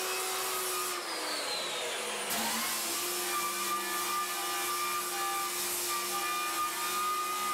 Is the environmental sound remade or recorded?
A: recorded